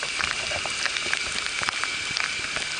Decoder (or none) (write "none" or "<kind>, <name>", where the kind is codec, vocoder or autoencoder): vocoder, BigVGAN v2